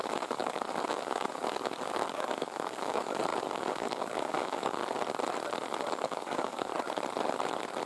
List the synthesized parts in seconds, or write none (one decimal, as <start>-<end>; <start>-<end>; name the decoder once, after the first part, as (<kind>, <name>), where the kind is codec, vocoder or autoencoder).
0.0-4.8 (codec, DAC); 5.9-6.7